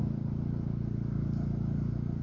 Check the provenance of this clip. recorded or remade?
recorded